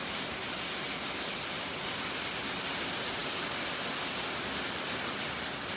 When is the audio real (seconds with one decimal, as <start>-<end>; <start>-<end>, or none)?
0.0-5.8